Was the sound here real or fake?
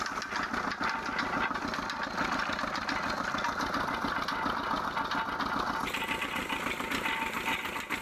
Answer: real